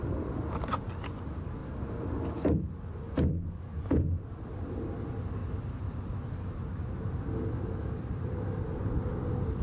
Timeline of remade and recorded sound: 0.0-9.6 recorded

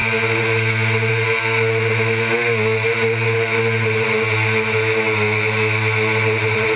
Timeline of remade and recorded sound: 0.0-6.8 recorded

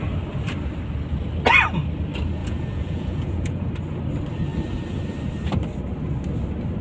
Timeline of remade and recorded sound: 0.0-2.4 recorded; 2.4-3.7 remade; 3.7-6.8 recorded

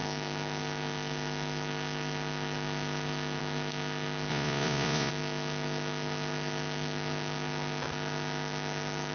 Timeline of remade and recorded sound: 0.0-4.3 recorded; 4.3-5.1 remade; 5.1-9.1 recorded

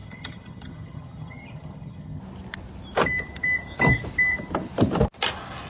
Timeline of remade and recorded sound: 0.0-2.2 remade; 2.2-5.7 recorded

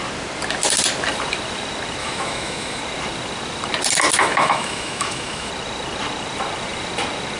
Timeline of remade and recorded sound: 0.0-2.0 recorded; 2.0-2.8 remade; 2.8-4.2 recorded; 4.2-5.5 remade; 5.5-7.4 recorded

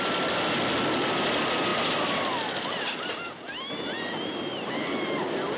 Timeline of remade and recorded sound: 0.0-5.6 recorded